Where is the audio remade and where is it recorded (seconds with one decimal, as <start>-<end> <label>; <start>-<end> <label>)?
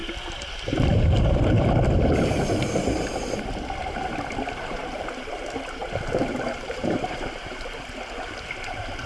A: 0.0-3.1 remade; 3.1-3.8 recorded; 3.8-4.9 remade; 4.9-5.8 recorded; 5.8-7.2 remade; 7.2-9.1 recorded